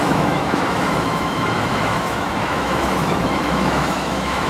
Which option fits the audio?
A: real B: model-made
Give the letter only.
B